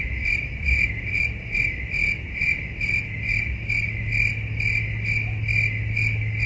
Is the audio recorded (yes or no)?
yes